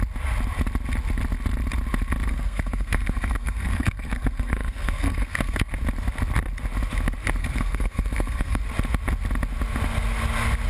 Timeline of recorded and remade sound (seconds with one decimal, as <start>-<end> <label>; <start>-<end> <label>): 0.0-2.3 recorded; 2.3-5.7 remade; 5.7-7.4 recorded; 7.4-8.6 remade; 8.6-10.7 recorded